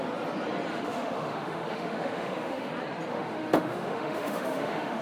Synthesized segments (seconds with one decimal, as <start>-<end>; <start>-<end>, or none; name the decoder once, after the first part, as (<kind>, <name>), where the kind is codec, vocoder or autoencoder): 0.7-2.7 (autoencoder, DAC-VAE); 3.1-5.0